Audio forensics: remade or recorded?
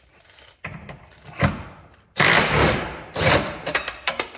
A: recorded